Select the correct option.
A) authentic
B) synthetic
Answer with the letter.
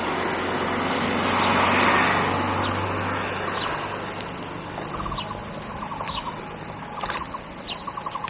A